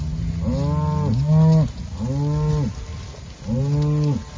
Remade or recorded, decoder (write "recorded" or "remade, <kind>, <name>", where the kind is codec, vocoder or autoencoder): recorded